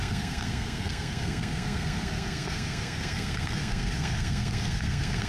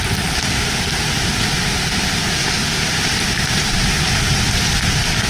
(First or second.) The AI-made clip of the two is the first